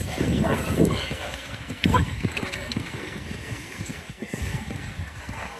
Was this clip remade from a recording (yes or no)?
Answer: yes